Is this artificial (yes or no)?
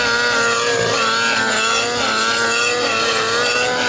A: no